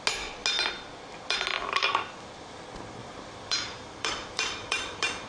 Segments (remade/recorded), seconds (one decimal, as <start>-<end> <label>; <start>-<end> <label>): 0.0-3.0 recorded; 3.0-5.3 remade